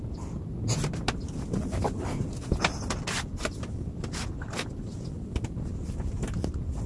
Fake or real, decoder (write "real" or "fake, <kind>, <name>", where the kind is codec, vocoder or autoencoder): real